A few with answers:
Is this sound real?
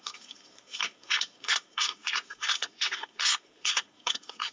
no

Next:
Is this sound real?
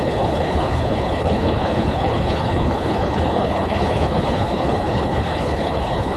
no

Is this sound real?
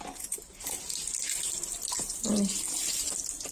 yes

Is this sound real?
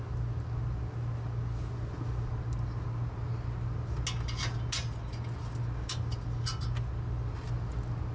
yes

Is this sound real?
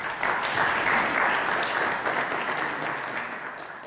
yes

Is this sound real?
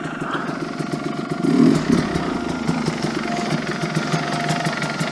yes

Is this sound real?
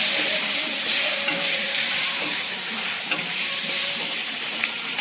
no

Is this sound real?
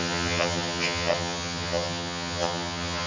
no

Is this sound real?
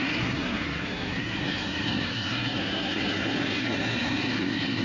no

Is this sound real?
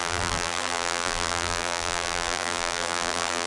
no